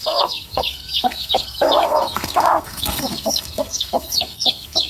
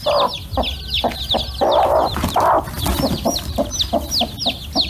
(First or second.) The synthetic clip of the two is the first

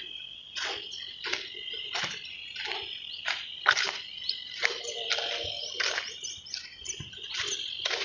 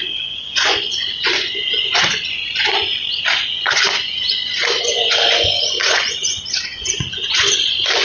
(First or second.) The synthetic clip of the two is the second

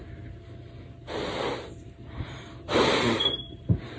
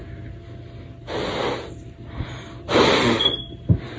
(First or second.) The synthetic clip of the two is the first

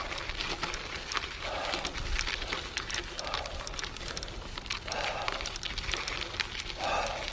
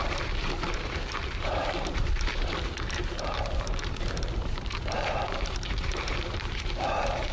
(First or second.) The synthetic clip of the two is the second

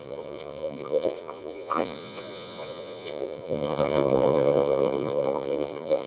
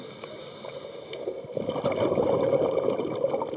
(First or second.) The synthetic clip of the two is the first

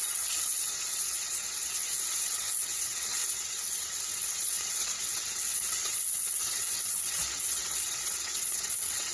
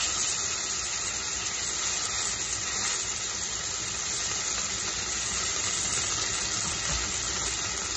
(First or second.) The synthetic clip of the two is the first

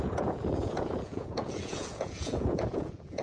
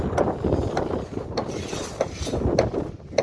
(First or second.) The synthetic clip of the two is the first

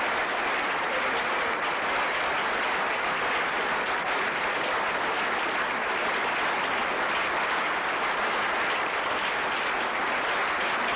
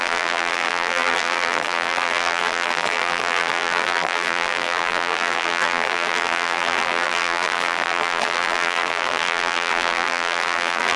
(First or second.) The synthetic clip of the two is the second